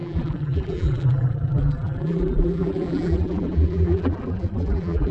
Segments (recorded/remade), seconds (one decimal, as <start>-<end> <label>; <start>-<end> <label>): 0.0-5.1 remade